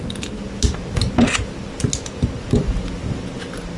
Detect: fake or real real